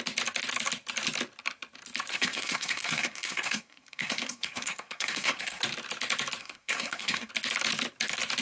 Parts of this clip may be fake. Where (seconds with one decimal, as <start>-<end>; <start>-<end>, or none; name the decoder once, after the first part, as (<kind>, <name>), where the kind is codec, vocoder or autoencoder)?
2.1-5.6 (codec, SNAC); 6.4-7.3

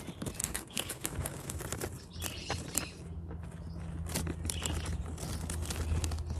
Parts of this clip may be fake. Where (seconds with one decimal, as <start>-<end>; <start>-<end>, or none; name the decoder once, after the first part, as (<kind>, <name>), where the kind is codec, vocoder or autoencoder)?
0.4-1.6 (codec, SNAC)

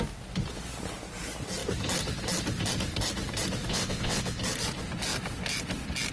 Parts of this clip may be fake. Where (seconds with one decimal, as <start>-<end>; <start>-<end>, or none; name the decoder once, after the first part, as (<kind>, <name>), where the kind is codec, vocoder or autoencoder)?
3.7-4.4 (vocoder, WaveNeXt)

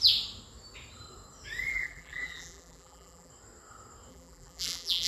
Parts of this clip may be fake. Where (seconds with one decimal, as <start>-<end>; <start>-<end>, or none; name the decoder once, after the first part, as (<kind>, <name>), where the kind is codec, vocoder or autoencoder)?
1.7-3.3 (vocoder, BigVGAN v2); 4.1-5.1

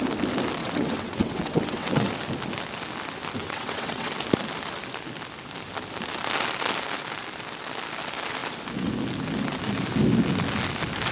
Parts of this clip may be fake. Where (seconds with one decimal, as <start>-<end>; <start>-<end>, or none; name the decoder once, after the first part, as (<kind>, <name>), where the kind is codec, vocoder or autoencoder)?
0.6-2.1 (vocoder, WaveNeXt); 3.4-4.1

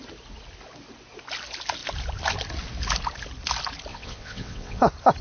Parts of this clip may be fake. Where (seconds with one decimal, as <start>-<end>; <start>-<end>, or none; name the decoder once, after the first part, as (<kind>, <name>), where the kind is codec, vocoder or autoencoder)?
3.9-4.8 (vocoder, WaveNeXt)

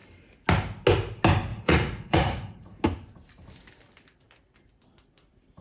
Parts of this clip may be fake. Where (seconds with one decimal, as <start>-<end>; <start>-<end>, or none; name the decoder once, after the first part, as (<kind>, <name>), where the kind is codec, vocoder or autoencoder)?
1.5-2.8 (vocoder, Vocos)